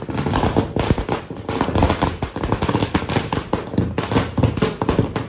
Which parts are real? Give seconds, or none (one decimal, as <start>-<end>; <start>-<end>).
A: 0.0-5.3